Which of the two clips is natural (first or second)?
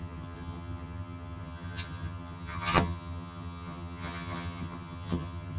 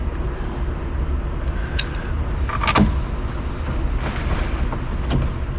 second